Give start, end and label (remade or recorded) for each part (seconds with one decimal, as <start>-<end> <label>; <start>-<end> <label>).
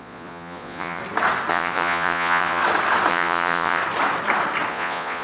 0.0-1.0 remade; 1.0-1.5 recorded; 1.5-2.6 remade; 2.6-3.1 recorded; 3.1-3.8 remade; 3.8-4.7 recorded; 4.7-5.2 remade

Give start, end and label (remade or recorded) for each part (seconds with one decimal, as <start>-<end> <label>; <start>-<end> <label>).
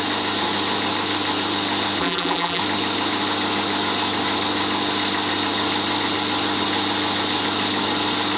0.0-2.0 recorded; 2.0-2.6 remade; 2.6-8.4 recorded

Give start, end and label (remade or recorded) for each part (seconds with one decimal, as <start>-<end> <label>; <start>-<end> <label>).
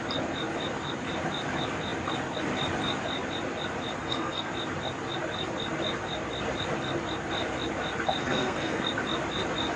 0.0-4.0 recorded; 4.0-4.5 remade; 4.5-8.2 recorded; 8.2-8.8 remade; 8.8-9.8 recorded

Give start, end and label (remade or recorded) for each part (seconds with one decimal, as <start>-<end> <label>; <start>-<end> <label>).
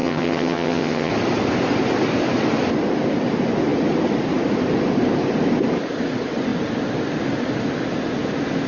0.0-1.1 remade; 1.1-8.7 recorded